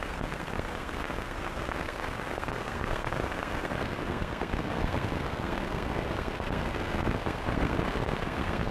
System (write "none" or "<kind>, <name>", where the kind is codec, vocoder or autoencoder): codec, SNAC